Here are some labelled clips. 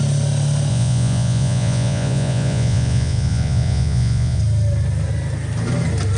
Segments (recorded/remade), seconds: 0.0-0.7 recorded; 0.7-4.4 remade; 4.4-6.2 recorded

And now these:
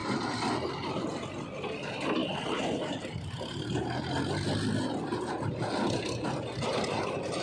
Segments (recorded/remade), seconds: 0.0-7.4 recorded

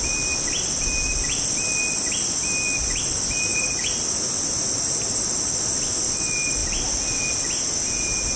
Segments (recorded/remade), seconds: 0.0-3.5 recorded; 3.5-4.0 remade; 4.0-8.4 recorded

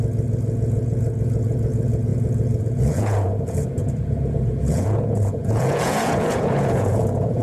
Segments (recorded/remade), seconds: 0.0-7.4 remade

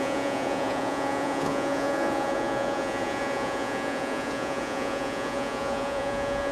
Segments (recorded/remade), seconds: 0.0-6.5 remade